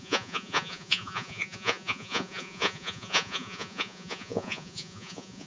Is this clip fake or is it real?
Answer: fake